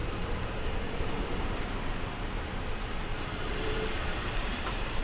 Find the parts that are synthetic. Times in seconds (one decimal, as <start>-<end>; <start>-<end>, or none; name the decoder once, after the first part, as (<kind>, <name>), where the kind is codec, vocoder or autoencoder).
0.0-1.6 (vocoder, BigVGAN v2); 3.1-5.0